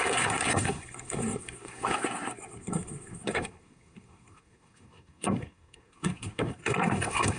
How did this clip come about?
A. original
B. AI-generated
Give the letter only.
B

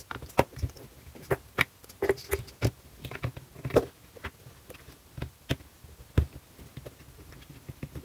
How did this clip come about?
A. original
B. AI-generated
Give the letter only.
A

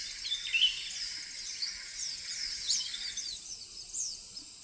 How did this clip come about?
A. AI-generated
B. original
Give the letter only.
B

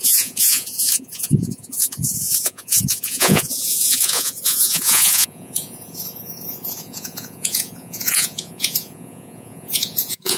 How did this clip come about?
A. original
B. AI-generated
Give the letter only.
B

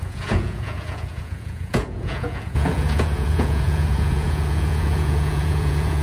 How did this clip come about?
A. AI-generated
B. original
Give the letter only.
A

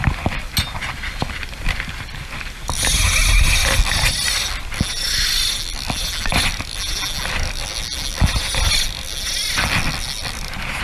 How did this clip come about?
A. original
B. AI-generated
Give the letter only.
A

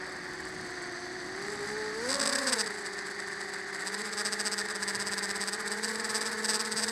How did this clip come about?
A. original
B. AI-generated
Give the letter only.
A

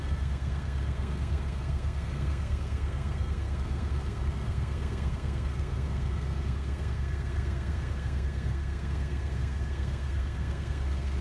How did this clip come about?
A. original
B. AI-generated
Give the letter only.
B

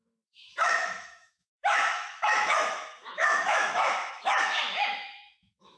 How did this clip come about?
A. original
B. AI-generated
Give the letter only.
B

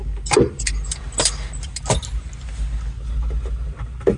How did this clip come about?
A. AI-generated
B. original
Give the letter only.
B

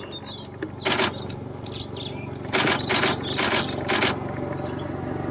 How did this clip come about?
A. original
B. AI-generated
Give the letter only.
A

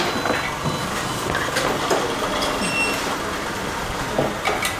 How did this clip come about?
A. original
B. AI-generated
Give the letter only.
A